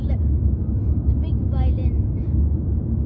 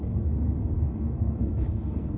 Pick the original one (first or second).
first